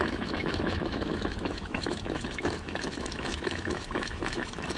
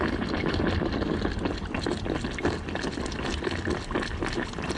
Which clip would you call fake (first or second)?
first